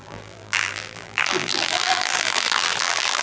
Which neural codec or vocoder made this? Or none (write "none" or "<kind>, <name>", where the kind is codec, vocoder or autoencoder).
vocoder, BigVGAN v2